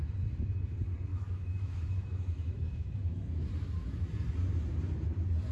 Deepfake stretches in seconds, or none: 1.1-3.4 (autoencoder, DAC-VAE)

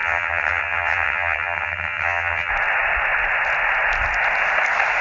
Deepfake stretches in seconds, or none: 0.0-2.5 (vocoder, HiFi-GAN)

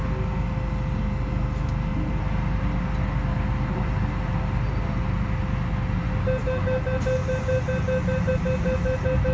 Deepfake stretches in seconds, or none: none

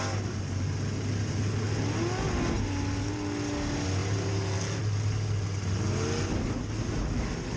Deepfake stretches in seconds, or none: none

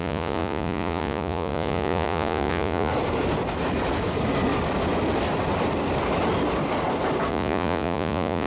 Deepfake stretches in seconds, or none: 0.0-2.9 (vocoder, Vocos); 7.3-8.5